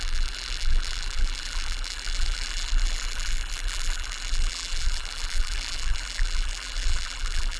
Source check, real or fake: fake